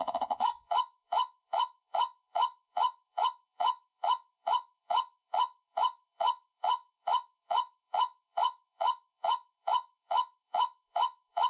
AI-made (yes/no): yes